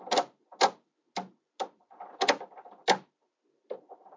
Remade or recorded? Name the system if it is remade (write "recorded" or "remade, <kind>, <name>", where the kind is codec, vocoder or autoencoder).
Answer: recorded